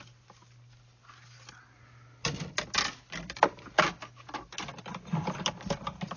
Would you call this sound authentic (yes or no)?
yes